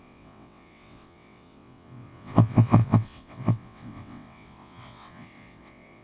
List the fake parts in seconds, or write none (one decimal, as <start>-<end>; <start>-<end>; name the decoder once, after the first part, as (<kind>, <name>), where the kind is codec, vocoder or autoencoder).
0.0-6.0 (vocoder, WaveNeXt)